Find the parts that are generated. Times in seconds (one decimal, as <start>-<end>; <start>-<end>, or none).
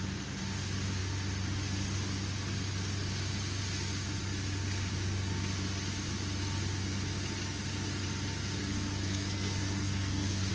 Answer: 8.6-10.5